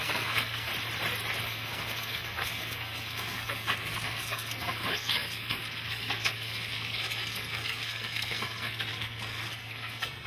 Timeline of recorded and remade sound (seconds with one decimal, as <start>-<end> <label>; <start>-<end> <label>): 0.0-0.7 remade; 0.7-1.4 recorded; 1.4-10.3 remade